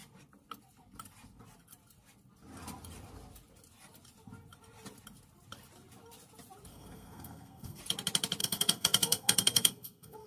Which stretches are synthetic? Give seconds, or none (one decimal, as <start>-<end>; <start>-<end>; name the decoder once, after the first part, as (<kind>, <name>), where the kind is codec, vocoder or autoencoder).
6.7-7.8 (codec, SNAC); 8.4-10.3